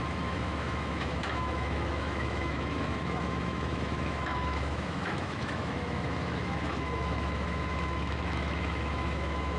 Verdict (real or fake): fake